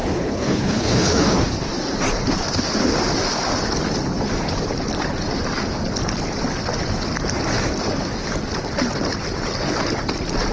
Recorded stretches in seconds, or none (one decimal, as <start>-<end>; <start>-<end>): 1.7-10.5